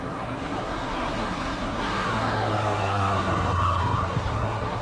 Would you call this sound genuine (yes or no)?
no